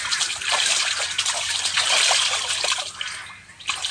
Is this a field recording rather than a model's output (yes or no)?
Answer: yes